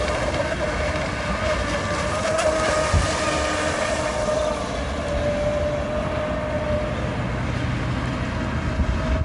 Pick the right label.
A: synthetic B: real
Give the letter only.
B